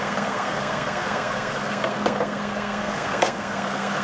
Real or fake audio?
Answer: fake